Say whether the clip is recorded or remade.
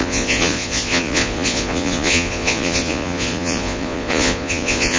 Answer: remade